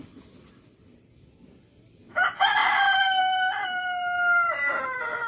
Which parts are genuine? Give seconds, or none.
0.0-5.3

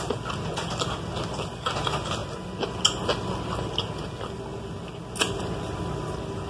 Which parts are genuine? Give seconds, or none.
0.0-6.5

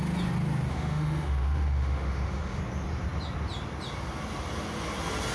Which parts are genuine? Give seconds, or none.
0.0-0.7; 2.6-5.3

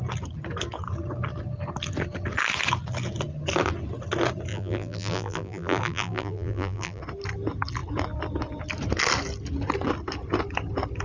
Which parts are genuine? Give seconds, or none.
0.0-4.5; 7.0-11.0

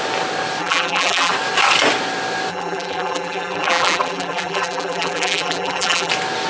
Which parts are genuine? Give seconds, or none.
0.0-0.6; 1.3-2.5; 6.1-6.5

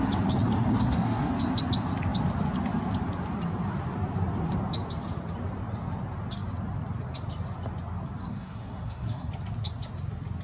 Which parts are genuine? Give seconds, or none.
0.0-0.7; 1.3-8.2; 9.3-10.4